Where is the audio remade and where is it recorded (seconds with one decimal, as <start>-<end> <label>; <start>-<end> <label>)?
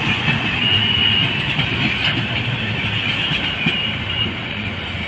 0.0-1.0 remade; 1.0-4.1 recorded; 4.1-5.1 remade